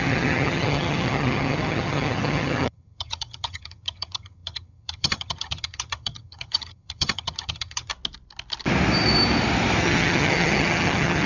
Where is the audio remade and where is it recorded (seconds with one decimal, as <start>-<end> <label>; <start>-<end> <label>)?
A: 0.0-7.9 remade; 7.9-9.8 recorded; 9.8-11.3 remade